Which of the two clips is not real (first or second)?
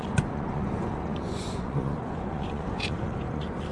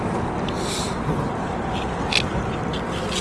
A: first